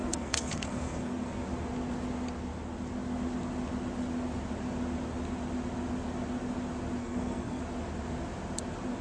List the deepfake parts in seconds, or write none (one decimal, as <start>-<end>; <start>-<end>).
0.0-1.4; 7.0-7.6